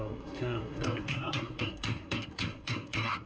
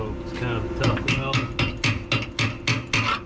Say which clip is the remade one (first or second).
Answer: first